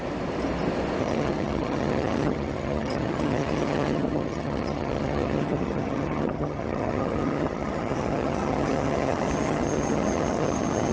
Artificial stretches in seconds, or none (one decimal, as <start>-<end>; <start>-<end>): 1.0-10.9